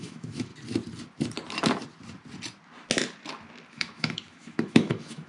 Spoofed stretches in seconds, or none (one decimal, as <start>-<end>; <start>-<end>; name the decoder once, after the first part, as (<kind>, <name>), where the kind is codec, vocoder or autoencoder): 0.0-0.5 (autoencoder, DAC-VAE); 3.7-5.3